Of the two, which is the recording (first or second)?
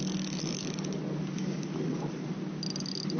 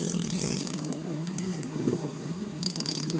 first